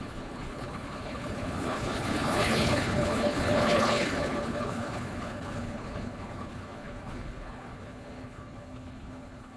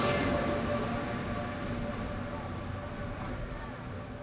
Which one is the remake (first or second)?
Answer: first